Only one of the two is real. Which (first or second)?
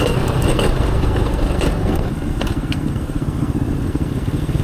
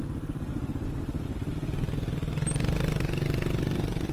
second